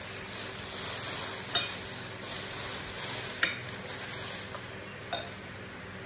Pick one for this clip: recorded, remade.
recorded